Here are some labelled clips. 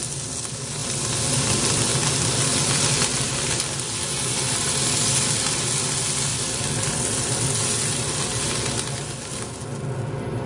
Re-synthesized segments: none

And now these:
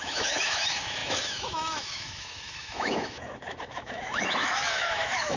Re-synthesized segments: 0.0-5.4 (autoencoder, DAC-VAE)

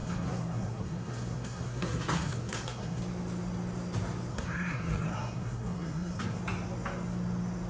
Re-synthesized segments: 0.0-3.0 (codec, SNAC); 4.3-6.4

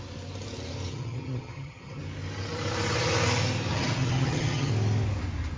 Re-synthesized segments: 0.9-2.0 (vocoder, HiFi-GAN); 3.7-4.7

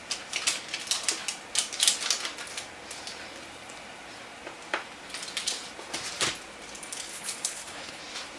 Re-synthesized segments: 7.1-8.0 (codec, HILCodec)

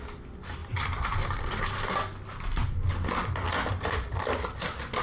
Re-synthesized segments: 0.6-1.6 (vocoder, BigVGAN v2)

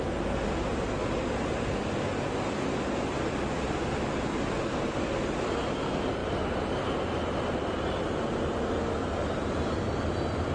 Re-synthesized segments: none

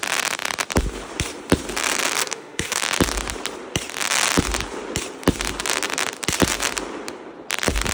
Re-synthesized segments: 2.2-2.8 (autoencoder, DAC-VAE)